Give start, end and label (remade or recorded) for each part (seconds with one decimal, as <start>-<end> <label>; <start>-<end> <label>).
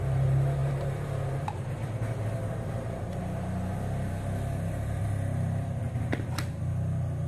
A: 0.0-7.3 recorded